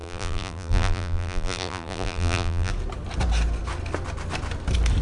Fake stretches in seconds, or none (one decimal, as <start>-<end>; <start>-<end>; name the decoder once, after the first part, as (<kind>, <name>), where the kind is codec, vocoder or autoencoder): 0.0-2.7 (vocoder, BigVGAN v2)